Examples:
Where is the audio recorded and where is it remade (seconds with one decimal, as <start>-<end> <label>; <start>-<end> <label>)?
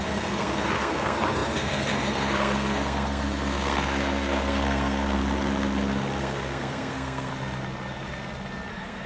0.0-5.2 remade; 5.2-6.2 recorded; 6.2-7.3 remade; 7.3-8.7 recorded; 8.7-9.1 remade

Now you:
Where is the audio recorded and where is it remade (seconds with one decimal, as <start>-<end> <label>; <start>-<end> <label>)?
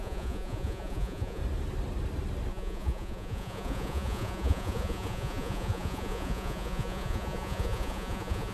0.0-1.4 remade; 1.4-2.5 recorded; 2.5-8.5 remade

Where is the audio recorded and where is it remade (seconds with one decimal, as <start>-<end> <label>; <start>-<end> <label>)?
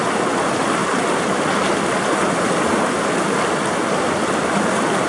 0.0-5.1 recorded